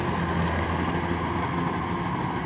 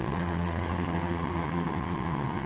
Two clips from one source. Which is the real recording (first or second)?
first